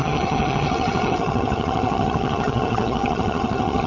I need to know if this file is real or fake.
fake